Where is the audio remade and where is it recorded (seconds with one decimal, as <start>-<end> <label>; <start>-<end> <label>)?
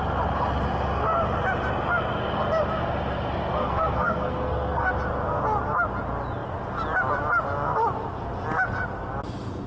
0.0-3.6 recorded; 3.6-4.9 remade; 4.9-9.7 recorded